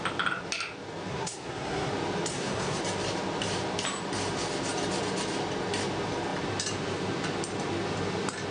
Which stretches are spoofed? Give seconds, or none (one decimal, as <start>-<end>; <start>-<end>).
1.1-1.9; 2.3-2.8